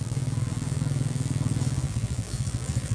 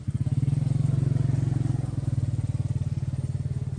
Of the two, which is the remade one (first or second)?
first